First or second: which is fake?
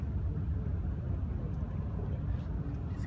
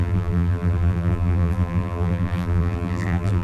second